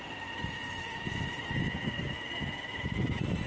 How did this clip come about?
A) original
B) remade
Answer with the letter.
A